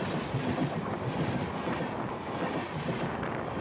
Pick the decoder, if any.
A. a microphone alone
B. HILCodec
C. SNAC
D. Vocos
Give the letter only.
A